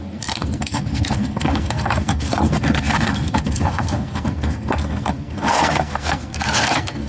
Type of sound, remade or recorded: remade